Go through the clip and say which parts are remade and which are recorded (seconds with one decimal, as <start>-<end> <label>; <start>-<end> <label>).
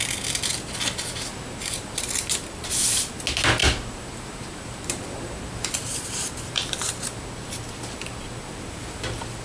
0.0-1.3 recorded; 1.3-2.1 remade; 2.1-3.6 recorded; 3.6-7.2 remade; 7.2-9.4 recorded